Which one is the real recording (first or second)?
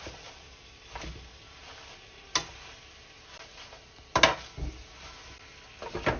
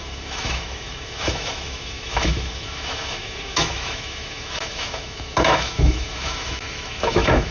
first